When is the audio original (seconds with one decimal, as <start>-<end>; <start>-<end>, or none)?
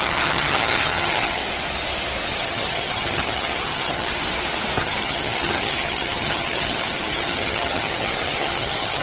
1.4-2.4; 4.1-4.8